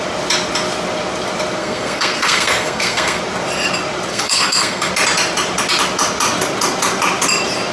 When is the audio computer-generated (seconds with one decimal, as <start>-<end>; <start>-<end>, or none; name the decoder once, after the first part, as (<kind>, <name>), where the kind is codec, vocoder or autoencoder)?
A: 1.6-3.2 (codec, SNAC); 4.1-4.9